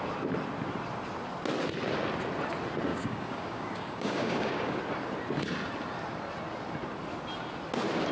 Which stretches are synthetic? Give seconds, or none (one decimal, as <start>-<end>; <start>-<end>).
2.9-4.8